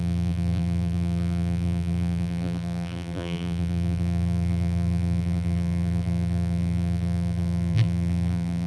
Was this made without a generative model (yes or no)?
no